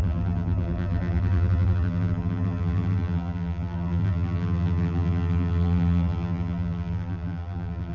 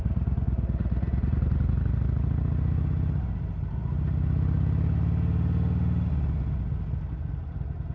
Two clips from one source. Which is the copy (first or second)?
first